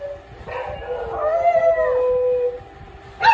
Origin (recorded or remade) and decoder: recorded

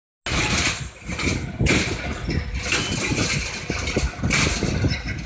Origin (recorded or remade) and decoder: recorded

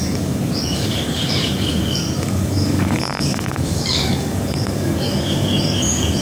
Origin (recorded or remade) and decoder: remade, codec, DAC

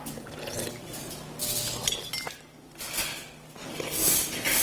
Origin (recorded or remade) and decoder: recorded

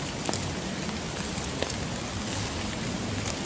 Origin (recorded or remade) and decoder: recorded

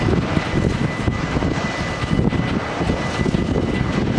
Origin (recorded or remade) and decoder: recorded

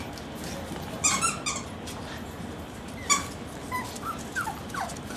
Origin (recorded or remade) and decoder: recorded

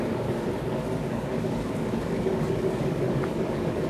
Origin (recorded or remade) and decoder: remade, codec, DAC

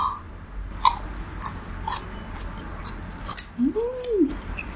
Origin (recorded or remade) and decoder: recorded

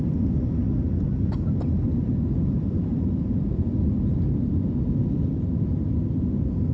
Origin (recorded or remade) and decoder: remade, vocoder, BigVGAN v2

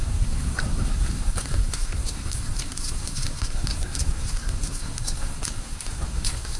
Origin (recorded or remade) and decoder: remade, codec, SNAC